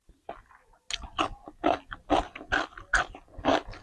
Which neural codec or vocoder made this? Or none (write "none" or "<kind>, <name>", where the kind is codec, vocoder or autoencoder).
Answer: none